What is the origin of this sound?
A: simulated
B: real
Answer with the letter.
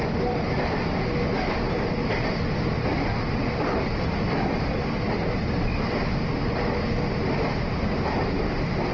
B